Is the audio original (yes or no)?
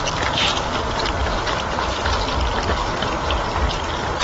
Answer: no